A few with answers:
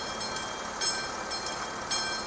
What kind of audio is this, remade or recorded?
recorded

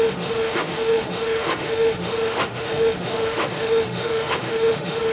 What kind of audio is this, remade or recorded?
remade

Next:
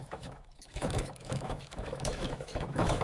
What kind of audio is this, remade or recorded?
remade